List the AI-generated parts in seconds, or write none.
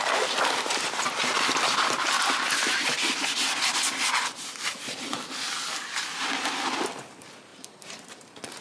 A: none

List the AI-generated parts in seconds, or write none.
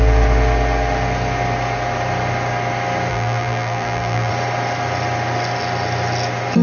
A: 3.1-4.3 (vocoder, BigVGAN v2)